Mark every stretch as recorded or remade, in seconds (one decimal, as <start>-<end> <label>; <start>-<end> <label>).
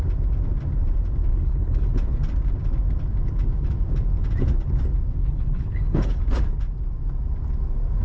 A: 0.0-1.3 recorded; 1.3-1.9 remade; 1.9-5.2 recorded; 5.2-6.2 remade; 6.2-8.0 recorded